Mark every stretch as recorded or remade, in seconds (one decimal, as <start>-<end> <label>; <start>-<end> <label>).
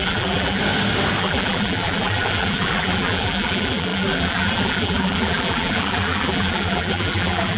0.0-0.6 remade; 0.6-1.2 recorded; 1.2-7.6 remade